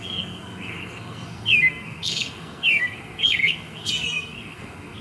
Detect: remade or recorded remade